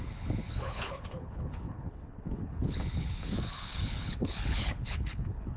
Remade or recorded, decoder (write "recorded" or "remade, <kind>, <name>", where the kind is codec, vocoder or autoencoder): remade, codec, HILCodec